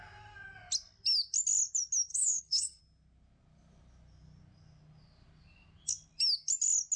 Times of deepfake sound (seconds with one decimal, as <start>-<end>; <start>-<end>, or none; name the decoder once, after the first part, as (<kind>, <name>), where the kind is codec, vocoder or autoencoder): 2.1-2.8 (codec, HILCodec)